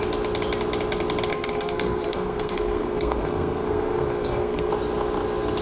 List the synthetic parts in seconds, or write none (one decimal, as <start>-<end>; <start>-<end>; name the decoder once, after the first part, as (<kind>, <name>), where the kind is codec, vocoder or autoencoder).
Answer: 1.3-4.7 (codec, SNAC)